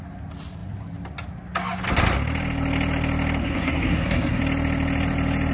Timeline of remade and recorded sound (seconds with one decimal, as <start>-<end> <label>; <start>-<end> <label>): 0.0-3.4 recorded; 3.4-4.4 remade; 4.4-5.5 recorded